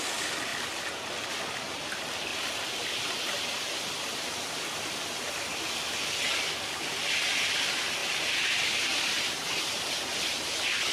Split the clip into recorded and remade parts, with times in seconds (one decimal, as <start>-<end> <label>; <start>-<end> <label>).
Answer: 0.0-8.0 recorded; 8.0-9.9 remade; 9.9-10.9 recorded